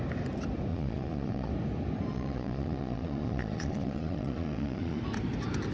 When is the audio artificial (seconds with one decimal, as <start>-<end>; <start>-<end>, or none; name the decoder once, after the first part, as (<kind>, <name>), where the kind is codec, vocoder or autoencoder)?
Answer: 0.7-1.5 (vocoder, Vocos); 2.1-5.0